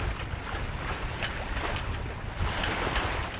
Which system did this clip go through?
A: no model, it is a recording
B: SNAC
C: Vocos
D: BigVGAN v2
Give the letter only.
A